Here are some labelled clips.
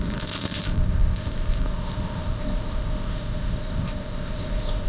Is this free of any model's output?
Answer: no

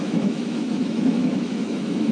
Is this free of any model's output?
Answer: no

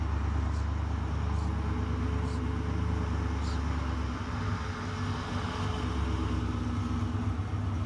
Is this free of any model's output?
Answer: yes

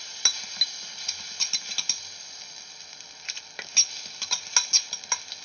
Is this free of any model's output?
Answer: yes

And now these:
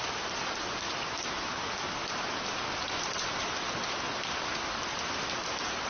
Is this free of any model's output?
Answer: yes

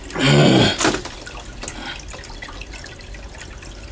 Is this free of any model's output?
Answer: yes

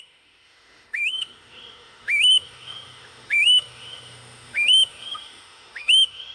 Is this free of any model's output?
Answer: no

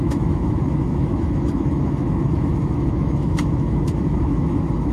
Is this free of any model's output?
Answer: no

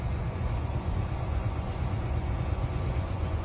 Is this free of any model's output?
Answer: no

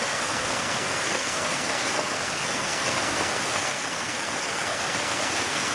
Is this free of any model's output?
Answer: no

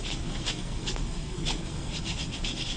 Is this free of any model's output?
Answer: no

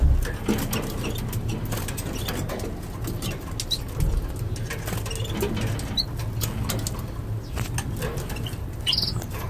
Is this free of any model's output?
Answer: yes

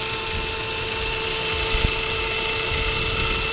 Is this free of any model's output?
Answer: yes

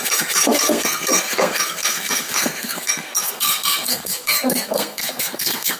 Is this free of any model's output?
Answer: no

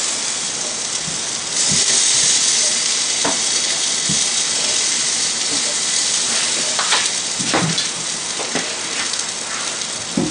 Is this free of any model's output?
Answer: yes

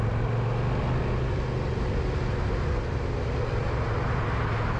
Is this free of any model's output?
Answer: yes